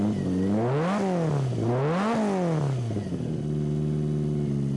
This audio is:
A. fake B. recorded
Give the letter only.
B